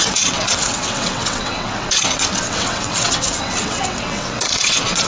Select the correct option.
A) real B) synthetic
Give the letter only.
B